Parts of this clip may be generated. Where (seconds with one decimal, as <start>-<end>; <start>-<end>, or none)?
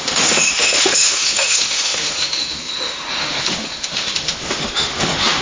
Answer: 0.0-5.4